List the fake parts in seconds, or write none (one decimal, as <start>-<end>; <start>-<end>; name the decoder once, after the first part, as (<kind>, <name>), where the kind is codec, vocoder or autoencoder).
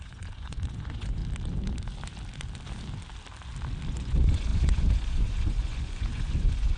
0.0-1.2 (vocoder, Vocos); 3.9-6.8